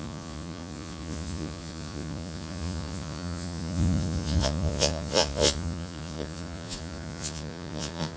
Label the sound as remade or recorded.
remade